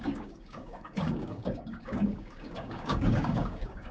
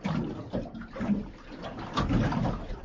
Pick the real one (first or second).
second